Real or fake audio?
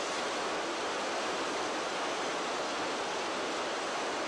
real